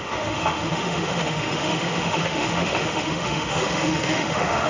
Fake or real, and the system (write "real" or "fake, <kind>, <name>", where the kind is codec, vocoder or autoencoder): fake, autoencoder, DAC-VAE